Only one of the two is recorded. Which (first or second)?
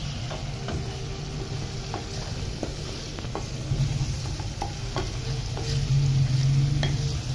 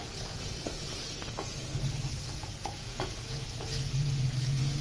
first